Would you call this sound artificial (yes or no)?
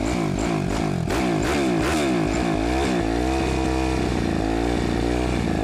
no